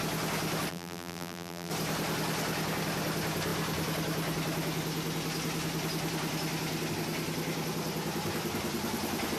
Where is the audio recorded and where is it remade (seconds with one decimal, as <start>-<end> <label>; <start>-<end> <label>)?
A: 0.0-0.7 recorded; 0.7-1.7 remade; 1.7-9.4 recorded